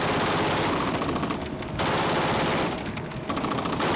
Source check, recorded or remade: recorded